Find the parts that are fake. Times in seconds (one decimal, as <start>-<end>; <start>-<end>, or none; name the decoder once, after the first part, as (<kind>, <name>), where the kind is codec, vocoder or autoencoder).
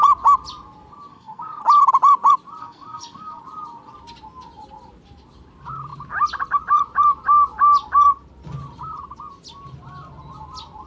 1.1-1.6 (codec, SNAC); 2.6-3.4